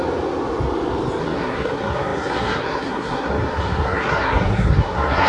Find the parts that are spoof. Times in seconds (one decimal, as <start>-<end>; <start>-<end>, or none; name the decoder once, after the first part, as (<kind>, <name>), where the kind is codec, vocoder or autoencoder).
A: 1.2-5.3 (codec, SNAC)